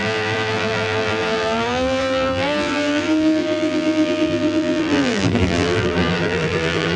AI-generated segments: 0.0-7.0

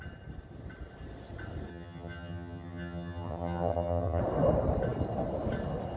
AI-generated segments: 1.7-4.2

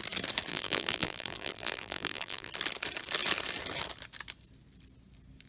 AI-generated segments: 0.5-2.5